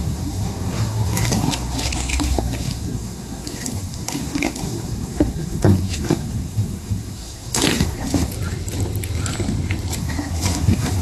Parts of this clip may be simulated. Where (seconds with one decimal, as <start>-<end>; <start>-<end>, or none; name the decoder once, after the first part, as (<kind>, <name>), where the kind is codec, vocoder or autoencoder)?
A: 0.0-8.3 (codec, SNAC); 10.0-11.0